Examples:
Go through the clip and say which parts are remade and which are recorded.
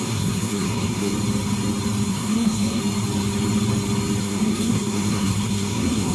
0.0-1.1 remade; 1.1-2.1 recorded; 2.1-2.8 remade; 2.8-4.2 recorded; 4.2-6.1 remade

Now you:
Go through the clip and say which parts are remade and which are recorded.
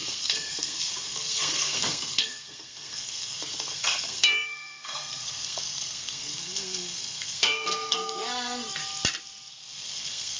0.0-8.8 remade; 8.8-9.5 recorded; 9.5-10.4 remade